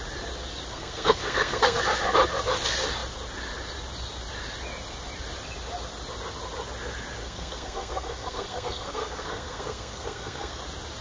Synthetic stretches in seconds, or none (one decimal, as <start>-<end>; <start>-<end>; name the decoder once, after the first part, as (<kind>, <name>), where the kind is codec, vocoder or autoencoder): 0.7-1.8 (codec, SNAC); 7.2-10.6

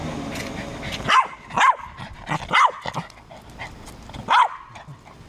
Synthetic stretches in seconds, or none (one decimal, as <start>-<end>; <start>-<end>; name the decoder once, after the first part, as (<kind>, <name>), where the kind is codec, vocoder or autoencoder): none